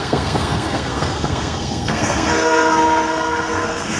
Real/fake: fake